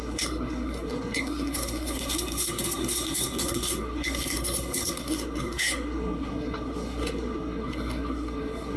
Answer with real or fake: fake